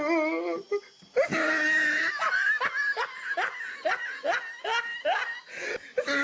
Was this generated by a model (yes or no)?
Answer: no